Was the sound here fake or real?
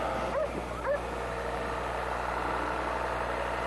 real